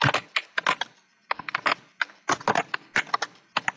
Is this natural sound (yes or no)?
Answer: yes